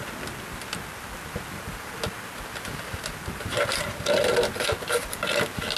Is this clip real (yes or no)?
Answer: yes